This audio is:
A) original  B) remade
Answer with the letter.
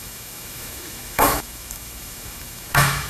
B